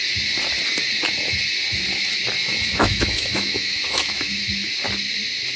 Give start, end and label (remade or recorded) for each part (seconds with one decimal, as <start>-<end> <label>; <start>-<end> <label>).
0.0-2.4 recorded; 2.4-4.4 remade; 4.4-5.6 recorded